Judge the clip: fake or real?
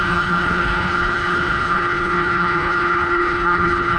fake